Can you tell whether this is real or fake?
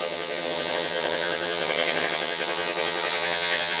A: fake